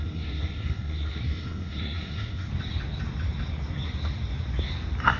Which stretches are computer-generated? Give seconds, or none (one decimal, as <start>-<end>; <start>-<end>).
0.0-2.5